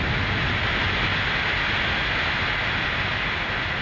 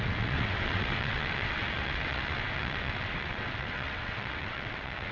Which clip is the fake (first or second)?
second